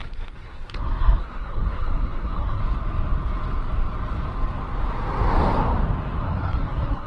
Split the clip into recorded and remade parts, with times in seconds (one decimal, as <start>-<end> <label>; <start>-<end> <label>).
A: 0.0-2.6 remade; 2.6-6.2 recorded; 6.2-7.1 remade